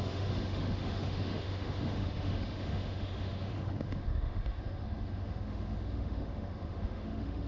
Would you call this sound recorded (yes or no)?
no